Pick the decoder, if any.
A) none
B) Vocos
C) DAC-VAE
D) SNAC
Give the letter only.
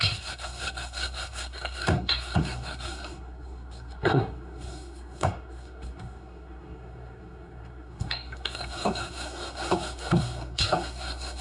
D